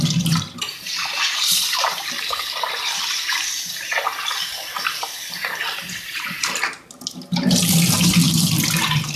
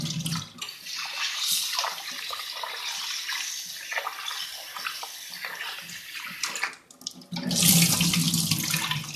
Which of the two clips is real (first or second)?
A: second